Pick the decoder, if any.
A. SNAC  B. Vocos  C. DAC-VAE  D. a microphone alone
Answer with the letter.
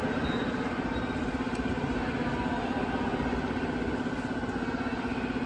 D